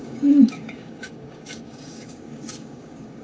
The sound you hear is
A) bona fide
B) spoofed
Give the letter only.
B